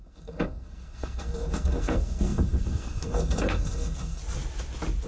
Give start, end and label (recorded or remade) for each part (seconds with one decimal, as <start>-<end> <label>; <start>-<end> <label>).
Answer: 0.0-4.2 remade; 4.2-5.1 recorded